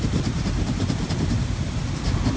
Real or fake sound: real